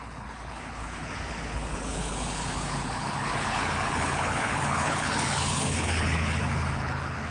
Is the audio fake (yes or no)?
yes